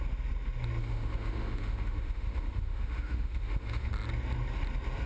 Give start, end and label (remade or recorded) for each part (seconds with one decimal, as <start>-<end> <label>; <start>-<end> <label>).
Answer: 0.0-0.8 recorded; 0.8-3.9 remade; 3.9-5.1 recorded